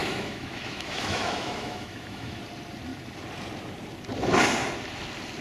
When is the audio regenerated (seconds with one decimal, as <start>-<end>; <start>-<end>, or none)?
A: 0.0-2.4